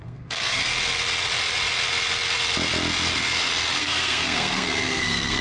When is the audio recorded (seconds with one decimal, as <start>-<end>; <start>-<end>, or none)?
0.6-3.8